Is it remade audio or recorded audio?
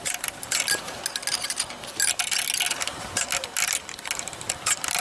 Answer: recorded